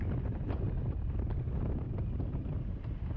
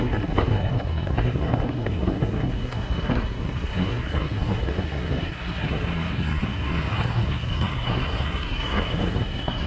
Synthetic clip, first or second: second